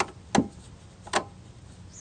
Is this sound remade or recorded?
recorded